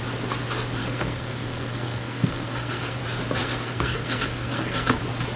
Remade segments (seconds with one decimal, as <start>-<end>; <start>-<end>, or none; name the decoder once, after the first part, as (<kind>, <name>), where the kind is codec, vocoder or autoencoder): 0.8-3.0 (codec, SNAC); 3.4-5.0